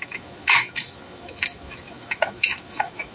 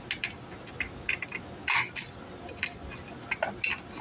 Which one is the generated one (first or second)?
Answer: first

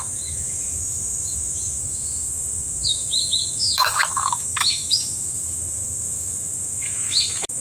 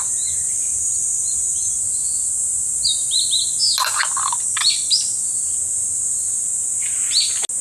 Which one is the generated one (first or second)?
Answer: first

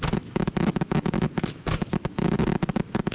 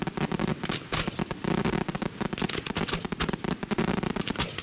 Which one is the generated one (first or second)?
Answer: first